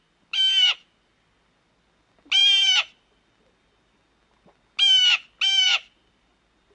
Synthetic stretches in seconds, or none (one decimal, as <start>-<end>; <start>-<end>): none